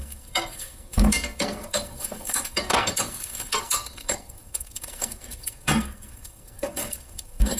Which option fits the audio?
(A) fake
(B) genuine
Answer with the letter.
A